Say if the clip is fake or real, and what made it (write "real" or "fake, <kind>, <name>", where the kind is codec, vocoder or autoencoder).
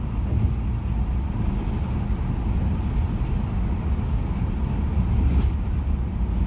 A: real